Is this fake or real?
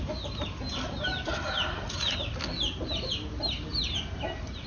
real